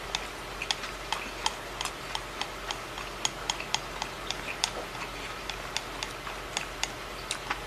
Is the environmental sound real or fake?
real